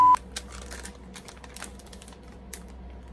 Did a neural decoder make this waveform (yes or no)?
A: no